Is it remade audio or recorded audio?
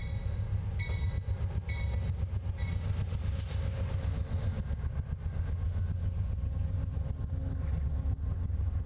recorded